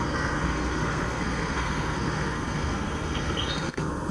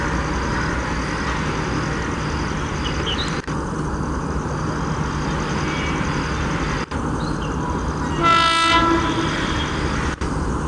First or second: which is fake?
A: first